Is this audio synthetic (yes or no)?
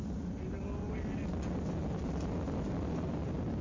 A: no